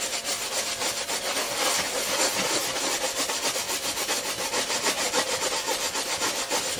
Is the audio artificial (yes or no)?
no